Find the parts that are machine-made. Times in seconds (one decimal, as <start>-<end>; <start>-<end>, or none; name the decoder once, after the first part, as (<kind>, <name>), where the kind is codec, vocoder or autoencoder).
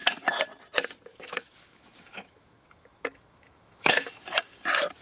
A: 1.1-4.1 (autoencoder, DAC-VAE)